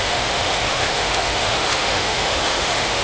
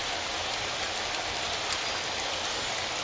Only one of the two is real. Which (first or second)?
second